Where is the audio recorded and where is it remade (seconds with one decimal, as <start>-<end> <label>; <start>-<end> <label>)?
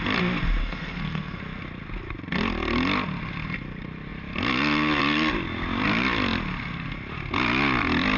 0.0-0.6 recorded; 0.6-1.4 remade; 1.4-8.2 recorded